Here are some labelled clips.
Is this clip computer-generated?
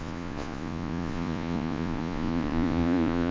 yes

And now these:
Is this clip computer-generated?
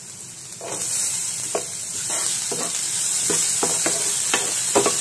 no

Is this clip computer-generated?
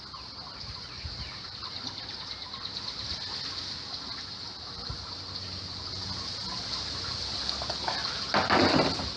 no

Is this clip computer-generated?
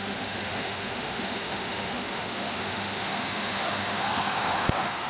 yes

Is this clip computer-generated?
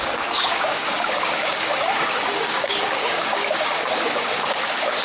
yes